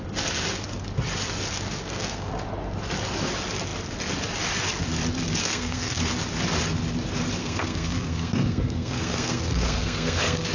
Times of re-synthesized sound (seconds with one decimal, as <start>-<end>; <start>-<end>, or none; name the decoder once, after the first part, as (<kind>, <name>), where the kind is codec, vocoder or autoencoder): 1.8-2.3 (codec, SNAC); 5.4-6.0; 7.4-10.5